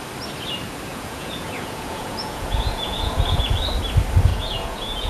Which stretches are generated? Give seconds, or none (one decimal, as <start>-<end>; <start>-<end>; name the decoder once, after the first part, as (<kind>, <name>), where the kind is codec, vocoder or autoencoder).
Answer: 0.9-3.5 (vocoder, Vocos); 4.3-5.1